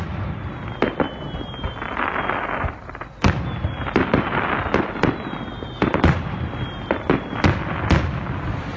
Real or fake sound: real